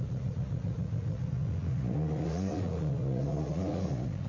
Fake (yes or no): yes